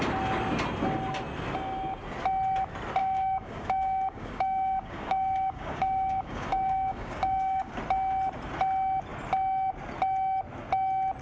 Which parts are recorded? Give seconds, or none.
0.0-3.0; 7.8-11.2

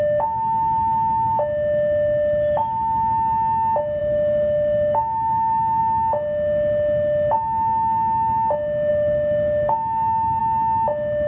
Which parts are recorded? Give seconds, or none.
0.0-4.0; 5.8-8.9; 10.4-11.3

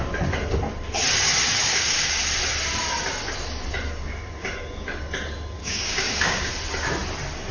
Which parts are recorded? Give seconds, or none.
0.0-1.6; 2.2-5.6; 6.5-7.5

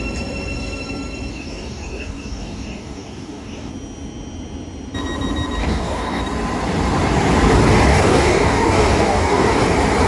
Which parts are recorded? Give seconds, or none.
0.0-1.3; 3.7-5.6; 6.2-7.9; 9.6-10.1

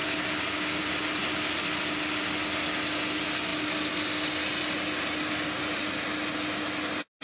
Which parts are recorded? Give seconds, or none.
0.0-7.2